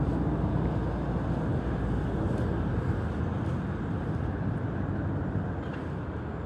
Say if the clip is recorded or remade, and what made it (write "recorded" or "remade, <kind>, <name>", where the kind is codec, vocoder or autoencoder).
recorded